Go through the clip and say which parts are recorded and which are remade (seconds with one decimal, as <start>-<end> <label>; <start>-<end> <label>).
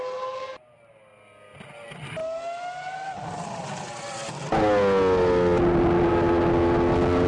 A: 0.0-7.3 recorded